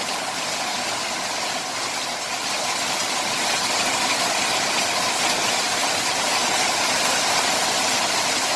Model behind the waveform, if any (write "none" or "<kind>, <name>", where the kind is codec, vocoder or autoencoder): none